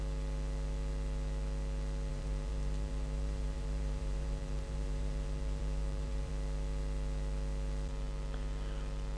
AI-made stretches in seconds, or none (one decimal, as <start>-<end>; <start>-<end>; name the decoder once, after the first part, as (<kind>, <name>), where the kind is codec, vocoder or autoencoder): 2.1-6.3 (vocoder, BigVGAN v2)